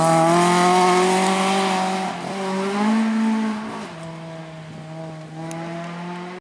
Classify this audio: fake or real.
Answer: real